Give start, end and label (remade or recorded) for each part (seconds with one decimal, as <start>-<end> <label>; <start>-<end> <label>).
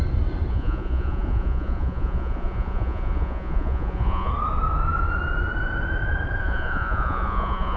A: 0.0-0.5 recorded; 0.5-4.3 remade; 4.3-6.4 recorded; 6.4-7.8 remade